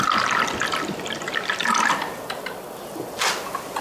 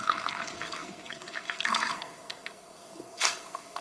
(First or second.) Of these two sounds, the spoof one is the second